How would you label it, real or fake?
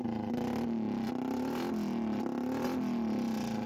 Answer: real